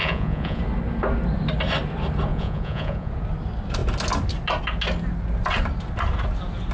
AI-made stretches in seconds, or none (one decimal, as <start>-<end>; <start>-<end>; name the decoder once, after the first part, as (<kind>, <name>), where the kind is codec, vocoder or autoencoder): 0.0-0.6 (vocoder, Vocos); 2.3-3.1